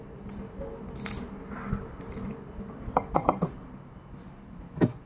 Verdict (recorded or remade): recorded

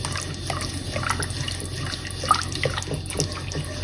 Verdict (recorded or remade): recorded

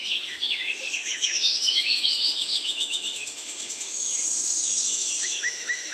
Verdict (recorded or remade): remade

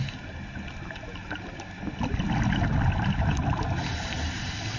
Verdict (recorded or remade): recorded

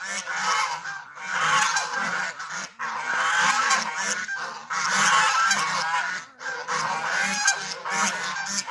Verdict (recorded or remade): recorded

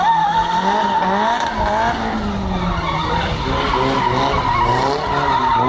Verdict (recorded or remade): recorded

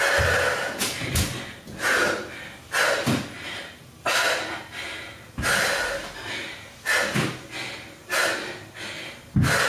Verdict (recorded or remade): recorded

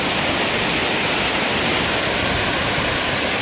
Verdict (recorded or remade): recorded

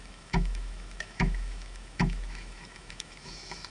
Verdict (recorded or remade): remade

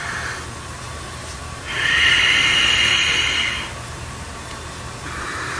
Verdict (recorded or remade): recorded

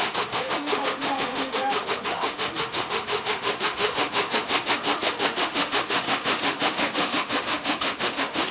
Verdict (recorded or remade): remade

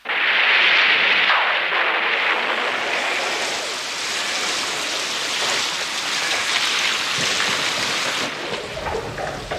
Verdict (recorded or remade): recorded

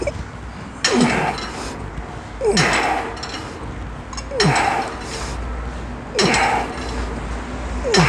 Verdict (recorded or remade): recorded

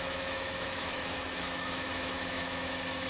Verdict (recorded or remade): remade